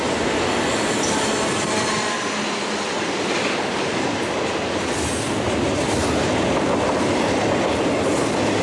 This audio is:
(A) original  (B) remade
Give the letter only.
A